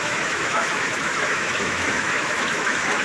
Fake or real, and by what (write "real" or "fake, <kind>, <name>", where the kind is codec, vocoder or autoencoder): fake, autoencoder, DAC-VAE